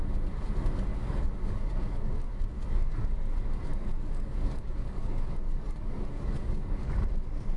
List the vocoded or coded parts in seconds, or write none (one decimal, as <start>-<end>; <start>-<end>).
0.9-3.0; 3.7-6.9